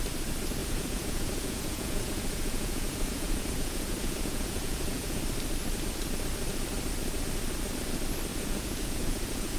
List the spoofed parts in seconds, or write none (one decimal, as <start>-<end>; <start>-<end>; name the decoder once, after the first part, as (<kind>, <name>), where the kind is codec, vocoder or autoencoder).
0.6-5.2 (vocoder, Vocos); 8.3-9.6